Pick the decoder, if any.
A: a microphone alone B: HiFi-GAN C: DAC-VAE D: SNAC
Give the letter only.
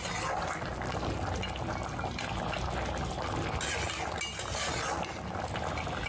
A